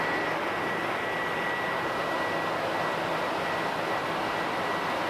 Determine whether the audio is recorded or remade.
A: recorded